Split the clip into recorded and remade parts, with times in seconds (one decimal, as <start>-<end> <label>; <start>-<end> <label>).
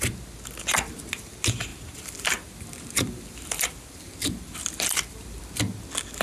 0.0-1.7 recorded; 1.7-5.4 remade; 5.4-6.2 recorded